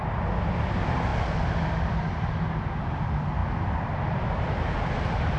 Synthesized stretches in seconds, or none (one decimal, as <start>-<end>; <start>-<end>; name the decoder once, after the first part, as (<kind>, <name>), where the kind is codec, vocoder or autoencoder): none

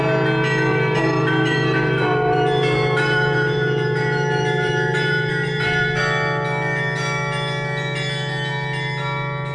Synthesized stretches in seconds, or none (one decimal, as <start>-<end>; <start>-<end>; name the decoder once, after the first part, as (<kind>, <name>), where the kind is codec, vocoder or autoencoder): 0.7-6.0 (vocoder, BigVGAN v2)